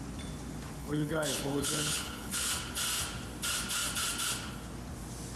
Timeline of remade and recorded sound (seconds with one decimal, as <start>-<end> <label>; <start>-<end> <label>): 0.0-0.8 recorded; 0.8-2.5 remade; 2.5-5.4 recorded